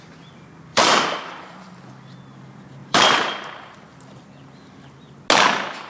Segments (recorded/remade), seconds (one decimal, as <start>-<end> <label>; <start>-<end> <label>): 0.0-0.7 recorded; 0.7-1.9 remade; 1.9-2.8 recorded; 2.8-4.2 remade; 4.2-5.9 recorded